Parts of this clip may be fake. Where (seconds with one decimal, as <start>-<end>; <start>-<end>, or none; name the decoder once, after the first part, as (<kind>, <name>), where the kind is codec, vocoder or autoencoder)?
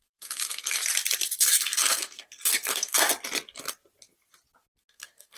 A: 0.0-0.8 (codec, SNAC); 1.4-3.1; 4.8-5.4